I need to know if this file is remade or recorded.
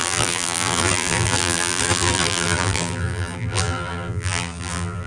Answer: remade